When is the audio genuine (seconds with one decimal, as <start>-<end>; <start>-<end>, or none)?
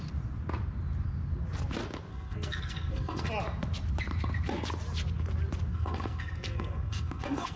0.0-2.1; 3.3-5.7